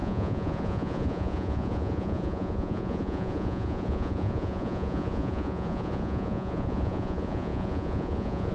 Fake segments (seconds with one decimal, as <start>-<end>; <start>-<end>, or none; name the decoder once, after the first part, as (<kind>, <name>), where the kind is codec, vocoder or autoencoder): 0.0-8.5 (vocoder, Vocos)